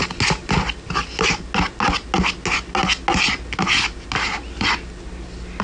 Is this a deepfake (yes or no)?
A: no